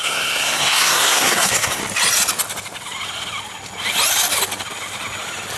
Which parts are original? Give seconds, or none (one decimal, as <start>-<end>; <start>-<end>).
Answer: 1.8-5.6